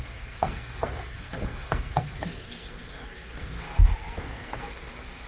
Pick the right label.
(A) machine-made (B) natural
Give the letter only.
A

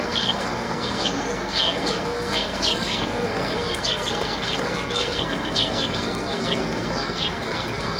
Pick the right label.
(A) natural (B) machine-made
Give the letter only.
B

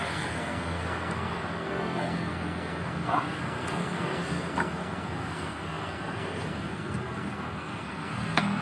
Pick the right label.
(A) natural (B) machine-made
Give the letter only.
B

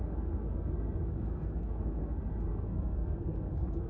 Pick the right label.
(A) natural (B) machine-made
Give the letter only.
B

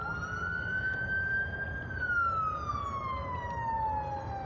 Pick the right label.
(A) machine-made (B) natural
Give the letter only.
B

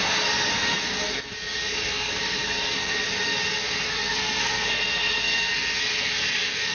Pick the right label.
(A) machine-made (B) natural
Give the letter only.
A